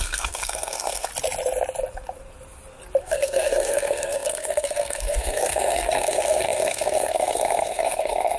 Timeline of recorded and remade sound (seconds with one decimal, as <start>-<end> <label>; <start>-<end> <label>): 0.0-1.1 remade; 1.1-3.0 recorded; 3.0-8.4 remade